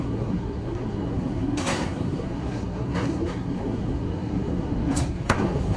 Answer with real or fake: fake